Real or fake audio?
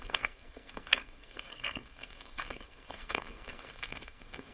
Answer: fake